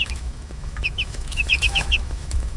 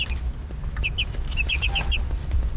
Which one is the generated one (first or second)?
first